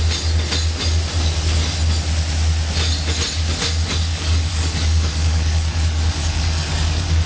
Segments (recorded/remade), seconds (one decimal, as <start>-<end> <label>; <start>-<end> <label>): 0.0-4.1 recorded; 4.1-7.3 remade